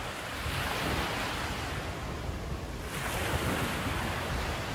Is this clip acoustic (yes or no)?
yes